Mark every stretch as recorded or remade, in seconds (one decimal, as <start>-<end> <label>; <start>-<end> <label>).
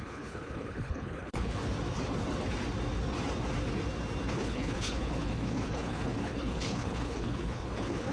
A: 0.0-1.6 remade; 1.6-4.3 recorded; 4.3-8.1 remade